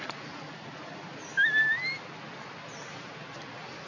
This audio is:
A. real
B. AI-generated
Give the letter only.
A